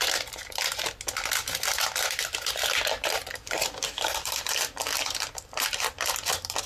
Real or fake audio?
real